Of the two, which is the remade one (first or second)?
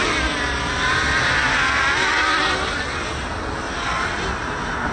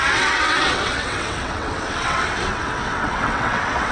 second